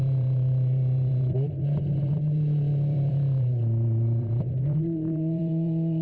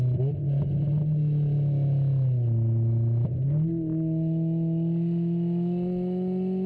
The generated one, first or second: first